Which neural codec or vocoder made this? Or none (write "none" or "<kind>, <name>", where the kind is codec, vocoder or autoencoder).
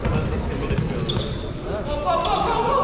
none